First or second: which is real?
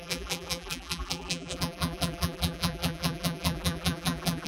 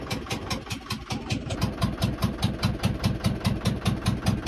second